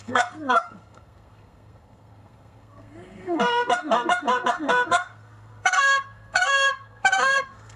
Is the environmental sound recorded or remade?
remade